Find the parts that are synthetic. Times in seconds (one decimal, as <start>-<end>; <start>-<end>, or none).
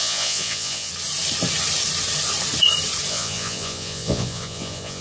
0.0-0.9; 3.1-5.0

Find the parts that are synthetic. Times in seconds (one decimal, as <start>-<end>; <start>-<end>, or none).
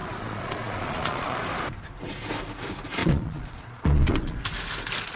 0.0-1.4; 3.0-4.4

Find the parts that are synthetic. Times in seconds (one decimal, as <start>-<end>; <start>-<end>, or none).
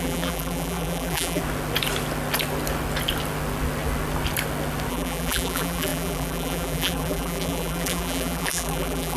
0.0-1.4; 4.9-9.2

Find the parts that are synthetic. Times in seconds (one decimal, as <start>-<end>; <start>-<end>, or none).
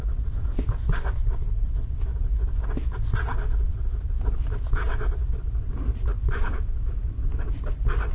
6.1-7.6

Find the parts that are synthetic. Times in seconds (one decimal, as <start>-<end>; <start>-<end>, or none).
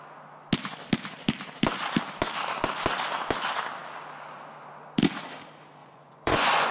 5.8-6.7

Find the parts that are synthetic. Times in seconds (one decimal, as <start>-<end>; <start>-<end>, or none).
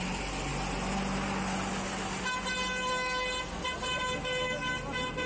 none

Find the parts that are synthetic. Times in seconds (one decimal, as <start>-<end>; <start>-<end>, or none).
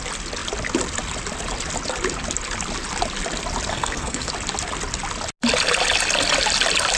3.7-4.3